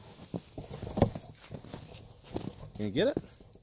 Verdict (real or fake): real